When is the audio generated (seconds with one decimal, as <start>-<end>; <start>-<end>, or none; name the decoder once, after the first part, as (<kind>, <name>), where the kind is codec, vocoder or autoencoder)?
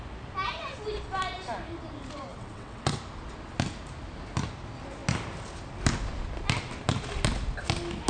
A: 2.3-3.0 (vocoder, WaveNeXt)